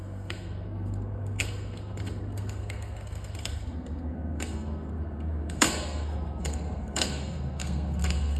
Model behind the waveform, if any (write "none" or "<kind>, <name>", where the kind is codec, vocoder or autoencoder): codec, SNAC